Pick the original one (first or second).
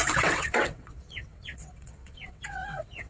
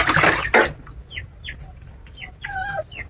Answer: second